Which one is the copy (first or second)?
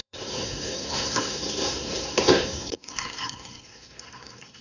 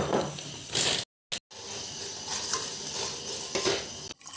first